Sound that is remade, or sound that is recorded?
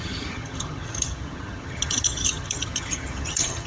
remade